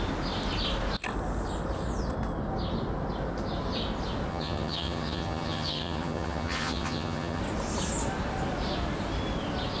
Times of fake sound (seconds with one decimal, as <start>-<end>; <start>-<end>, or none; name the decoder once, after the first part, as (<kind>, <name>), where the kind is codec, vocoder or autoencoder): 4.3-7.4 (vocoder, HiFi-GAN)